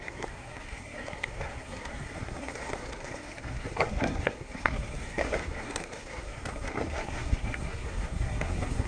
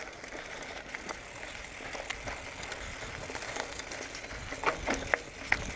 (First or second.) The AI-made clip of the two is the first